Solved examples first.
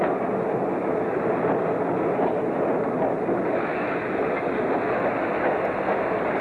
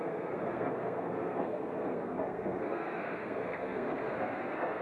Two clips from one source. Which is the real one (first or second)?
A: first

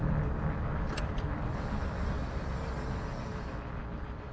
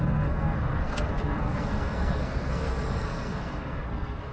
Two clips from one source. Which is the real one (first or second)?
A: first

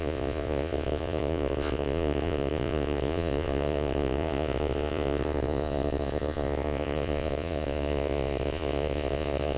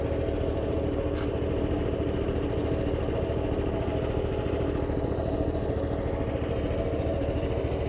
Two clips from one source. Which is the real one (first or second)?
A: second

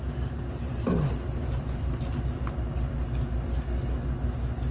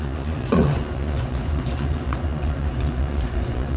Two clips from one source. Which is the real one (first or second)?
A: first